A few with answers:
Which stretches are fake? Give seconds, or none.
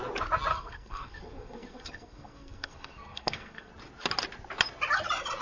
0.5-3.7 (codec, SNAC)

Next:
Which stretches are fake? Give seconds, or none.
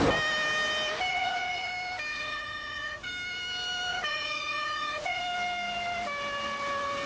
1.1-1.7 (vocoder, Vocos); 2.1-3.1; 3.9-5.2